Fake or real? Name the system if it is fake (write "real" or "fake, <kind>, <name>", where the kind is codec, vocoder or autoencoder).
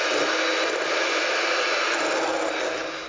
real